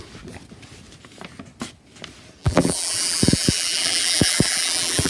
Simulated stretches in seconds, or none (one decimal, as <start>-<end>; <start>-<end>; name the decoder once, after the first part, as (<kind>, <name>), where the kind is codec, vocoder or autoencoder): 2.4-5.1 (vocoder, BigVGAN v2)